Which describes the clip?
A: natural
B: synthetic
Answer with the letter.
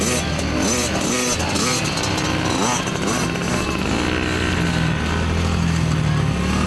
A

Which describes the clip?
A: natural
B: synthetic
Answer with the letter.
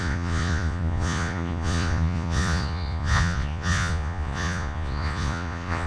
B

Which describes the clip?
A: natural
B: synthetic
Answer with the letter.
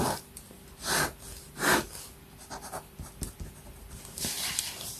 A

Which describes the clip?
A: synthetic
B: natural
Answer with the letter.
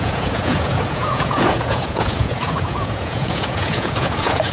A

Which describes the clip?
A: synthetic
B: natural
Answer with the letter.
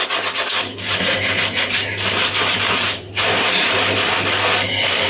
B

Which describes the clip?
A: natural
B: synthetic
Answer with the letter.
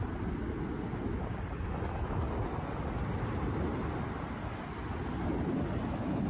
A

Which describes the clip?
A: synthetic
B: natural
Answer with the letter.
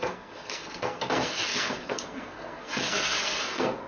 A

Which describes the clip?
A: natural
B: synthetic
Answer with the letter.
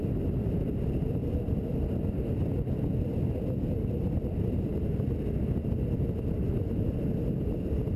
A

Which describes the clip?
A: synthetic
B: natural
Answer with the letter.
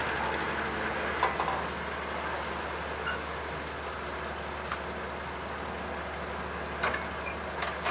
B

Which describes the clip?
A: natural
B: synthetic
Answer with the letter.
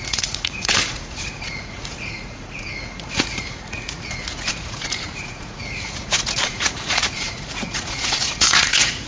B